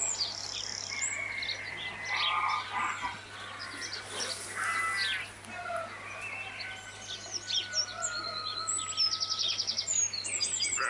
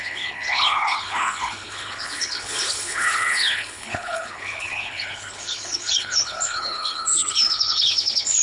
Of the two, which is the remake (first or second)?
second